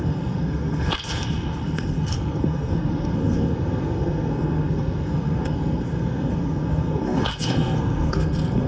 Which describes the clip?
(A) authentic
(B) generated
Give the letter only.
B